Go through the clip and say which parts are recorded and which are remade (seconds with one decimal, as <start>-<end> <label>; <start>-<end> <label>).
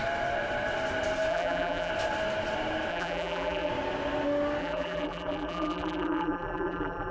0.0-1.3 recorded; 1.3-1.9 remade; 1.9-2.9 recorded; 2.9-3.7 remade; 3.7-4.6 recorded; 4.6-7.1 remade